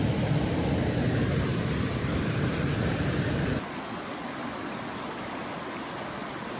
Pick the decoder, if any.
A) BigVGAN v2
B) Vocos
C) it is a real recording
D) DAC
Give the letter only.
C